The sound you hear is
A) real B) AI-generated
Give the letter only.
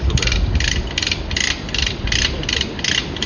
A